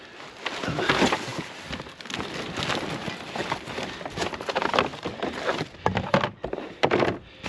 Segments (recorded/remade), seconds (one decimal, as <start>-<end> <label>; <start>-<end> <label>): 0.0-7.5 recorded